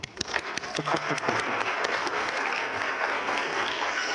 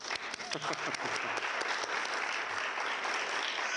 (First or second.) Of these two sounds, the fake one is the first